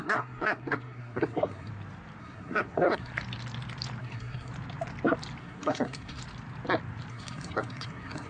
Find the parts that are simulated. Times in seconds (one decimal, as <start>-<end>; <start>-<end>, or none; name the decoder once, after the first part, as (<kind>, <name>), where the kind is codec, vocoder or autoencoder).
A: 0.0-1.7 (codec, SNAC); 2.2-3.1; 4.0-4.5; 5.4-6.2; 7.1-8.3